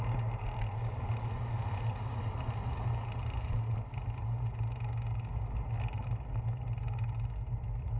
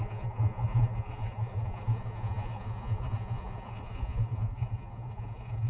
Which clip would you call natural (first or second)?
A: first